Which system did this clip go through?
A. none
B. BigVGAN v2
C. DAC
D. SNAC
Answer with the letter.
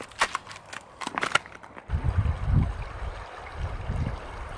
A